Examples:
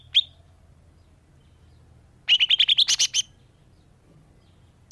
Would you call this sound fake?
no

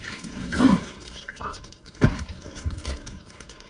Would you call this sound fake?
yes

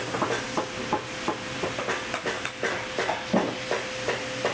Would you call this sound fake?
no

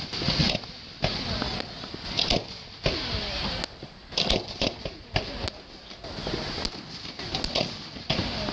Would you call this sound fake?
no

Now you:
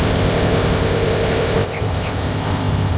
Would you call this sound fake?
yes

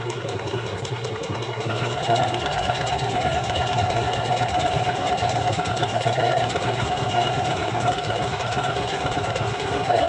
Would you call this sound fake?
yes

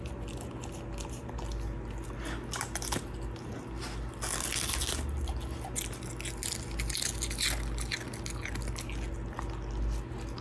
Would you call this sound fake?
no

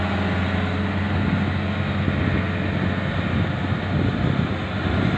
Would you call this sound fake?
no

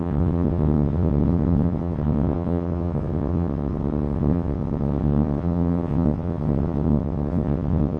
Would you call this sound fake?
yes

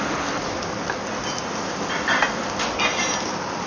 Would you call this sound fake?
yes